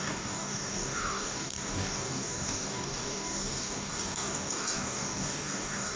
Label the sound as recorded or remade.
remade